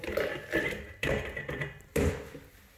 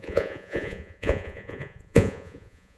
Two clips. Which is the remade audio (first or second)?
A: second